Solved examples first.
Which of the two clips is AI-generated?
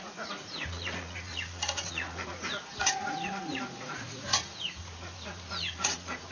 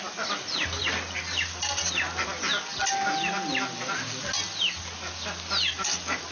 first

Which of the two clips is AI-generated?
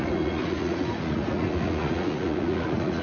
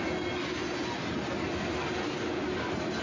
first